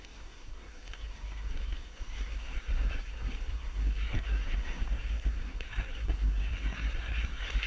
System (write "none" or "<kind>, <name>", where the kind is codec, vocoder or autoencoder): codec, SNAC